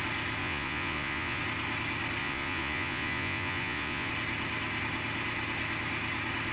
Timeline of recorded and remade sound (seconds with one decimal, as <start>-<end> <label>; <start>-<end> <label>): 0.0-0.4 recorded; 0.4-1.4 remade; 1.4-2.2 recorded; 2.2-4.1 remade; 4.1-6.5 recorded